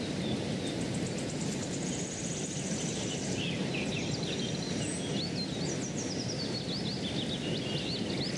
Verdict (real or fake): real